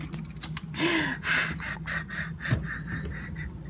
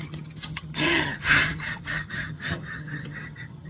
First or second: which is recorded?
first